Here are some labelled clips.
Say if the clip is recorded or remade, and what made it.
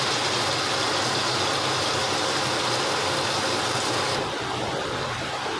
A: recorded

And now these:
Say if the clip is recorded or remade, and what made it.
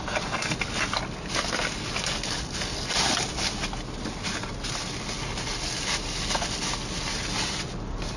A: recorded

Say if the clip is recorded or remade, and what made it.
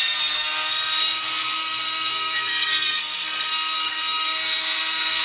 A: remade, codec, SNAC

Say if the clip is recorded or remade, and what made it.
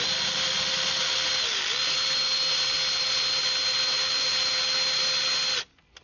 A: recorded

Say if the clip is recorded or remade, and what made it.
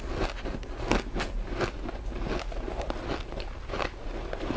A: recorded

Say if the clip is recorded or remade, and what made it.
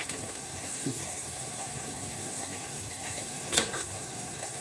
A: remade, codec, SNAC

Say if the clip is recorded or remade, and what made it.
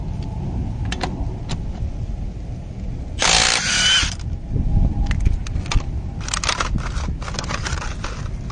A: recorded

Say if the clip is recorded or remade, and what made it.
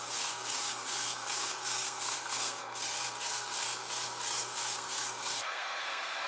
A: remade, codec, SNAC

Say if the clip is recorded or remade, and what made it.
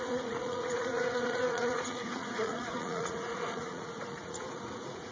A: remade, vocoder, Vocos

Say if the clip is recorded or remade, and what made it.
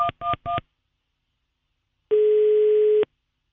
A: recorded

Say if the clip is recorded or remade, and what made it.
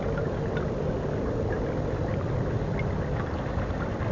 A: recorded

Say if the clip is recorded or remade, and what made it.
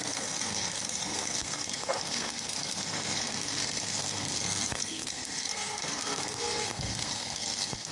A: remade, codec, SNAC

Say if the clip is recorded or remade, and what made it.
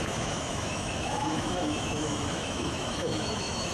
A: remade, autoencoder, DAC-VAE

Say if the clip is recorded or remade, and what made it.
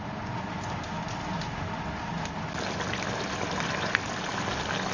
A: recorded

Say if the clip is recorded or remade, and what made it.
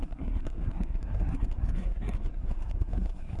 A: remade, codec, SNAC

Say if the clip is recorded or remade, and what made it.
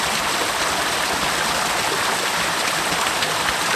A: recorded